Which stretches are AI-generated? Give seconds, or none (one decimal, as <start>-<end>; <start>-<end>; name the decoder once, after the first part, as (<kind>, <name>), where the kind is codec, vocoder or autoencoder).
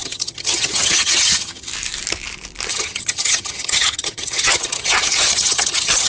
0.0-1.7 (vocoder, HiFi-GAN); 2.7-6.1